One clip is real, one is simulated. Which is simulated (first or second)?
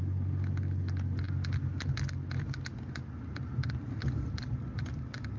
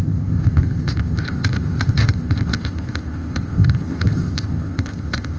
second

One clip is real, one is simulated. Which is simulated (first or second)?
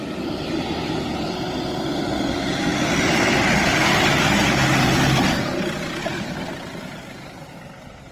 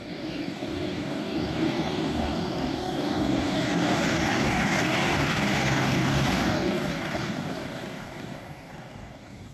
second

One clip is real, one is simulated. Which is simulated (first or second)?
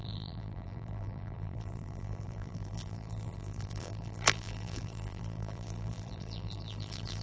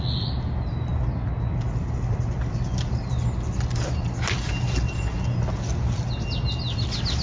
first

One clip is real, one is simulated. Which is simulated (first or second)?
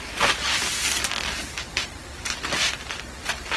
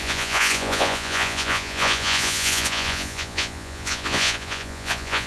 second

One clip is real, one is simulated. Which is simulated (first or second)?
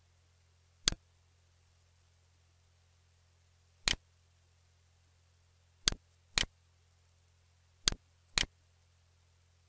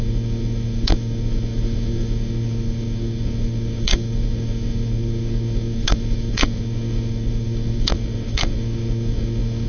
second